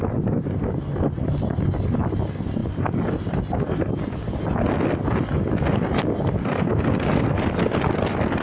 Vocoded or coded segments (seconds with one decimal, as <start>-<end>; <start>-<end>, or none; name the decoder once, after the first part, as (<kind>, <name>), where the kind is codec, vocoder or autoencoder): none